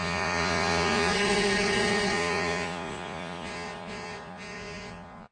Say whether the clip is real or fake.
fake